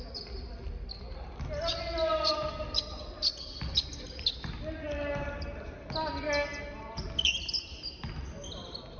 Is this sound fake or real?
real